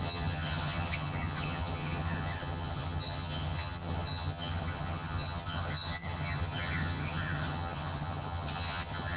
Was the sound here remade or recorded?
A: remade